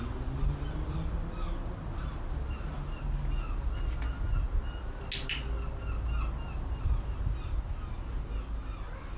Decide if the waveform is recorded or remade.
recorded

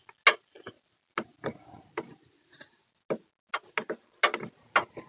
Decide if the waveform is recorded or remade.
recorded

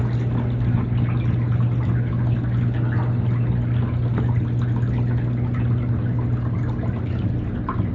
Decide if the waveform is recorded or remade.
recorded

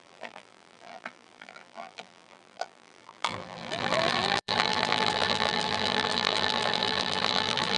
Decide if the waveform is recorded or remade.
remade